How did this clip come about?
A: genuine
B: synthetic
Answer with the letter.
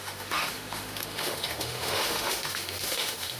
B